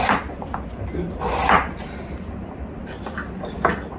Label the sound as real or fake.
real